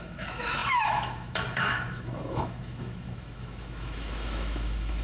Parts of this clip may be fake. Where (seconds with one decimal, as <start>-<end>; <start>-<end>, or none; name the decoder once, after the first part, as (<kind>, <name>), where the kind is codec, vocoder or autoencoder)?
0.0-5.0 (autoencoder, DAC-VAE)